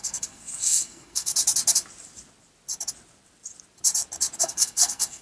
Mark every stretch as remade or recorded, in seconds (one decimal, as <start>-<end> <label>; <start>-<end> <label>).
0.0-1.3 remade; 1.3-4.4 recorded; 4.4-5.2 remade